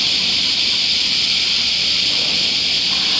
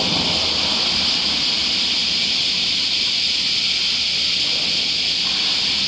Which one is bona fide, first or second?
second